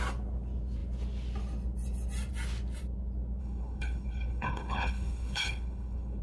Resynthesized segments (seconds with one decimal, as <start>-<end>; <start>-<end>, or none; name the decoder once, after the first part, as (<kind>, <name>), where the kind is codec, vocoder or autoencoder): 3.4-6.2 (codec, HILCodec)